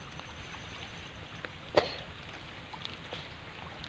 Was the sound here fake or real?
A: real